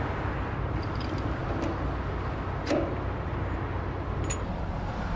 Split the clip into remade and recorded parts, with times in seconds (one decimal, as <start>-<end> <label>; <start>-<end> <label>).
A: 0.0-1.4 remade; 1.4-4.5 recorded; 4.5-5.2 remade